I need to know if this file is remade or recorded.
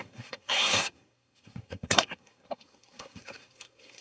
remade